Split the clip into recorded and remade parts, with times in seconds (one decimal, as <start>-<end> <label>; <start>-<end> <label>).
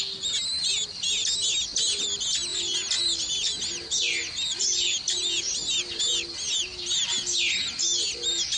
0.0-8.6 recorded